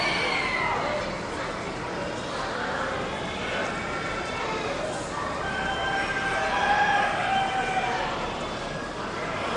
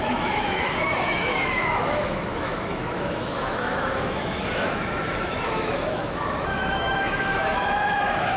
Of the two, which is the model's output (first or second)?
second